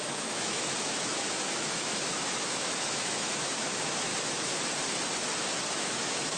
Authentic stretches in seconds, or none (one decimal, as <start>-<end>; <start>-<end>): 4.1-5.7

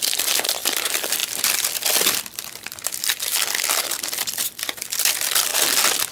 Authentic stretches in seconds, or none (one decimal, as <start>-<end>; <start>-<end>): 3.3-3.8; 5.5-6.1

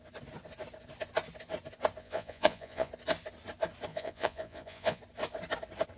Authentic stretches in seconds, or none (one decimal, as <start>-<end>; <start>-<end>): 0.0-2.0; 2.9-3.9; 5.0-6.0

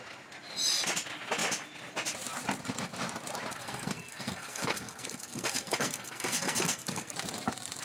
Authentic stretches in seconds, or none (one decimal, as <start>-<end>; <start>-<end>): 0.0-3.6; 7.1-7.8

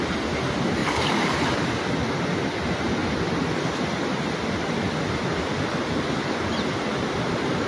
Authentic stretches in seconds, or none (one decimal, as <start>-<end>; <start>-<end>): 0.0-0.8; 1.7-3.0; 6.9-7.7

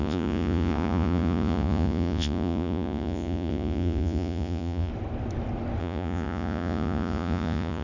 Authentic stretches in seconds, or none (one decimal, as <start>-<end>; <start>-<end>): 4.9-5.8

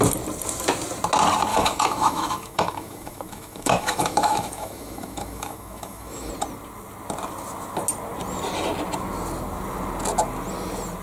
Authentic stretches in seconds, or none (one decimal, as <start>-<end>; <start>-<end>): 0.0-1.5; 6.3-11.0